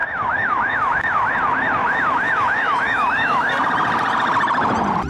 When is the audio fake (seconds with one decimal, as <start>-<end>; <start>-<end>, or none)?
0.0-1.3; 1.8-3.5